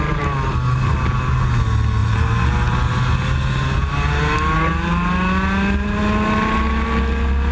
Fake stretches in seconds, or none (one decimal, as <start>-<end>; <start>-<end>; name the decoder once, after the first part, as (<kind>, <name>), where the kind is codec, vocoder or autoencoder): none